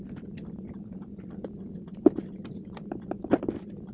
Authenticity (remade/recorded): recorded